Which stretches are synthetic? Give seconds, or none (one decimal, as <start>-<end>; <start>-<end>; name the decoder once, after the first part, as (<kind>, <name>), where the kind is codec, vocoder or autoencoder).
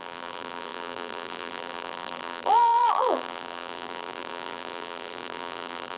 0.0-6.0 (vocoder, BigVGAN v2)